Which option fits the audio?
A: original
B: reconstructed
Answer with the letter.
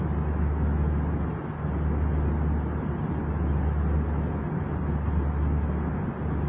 A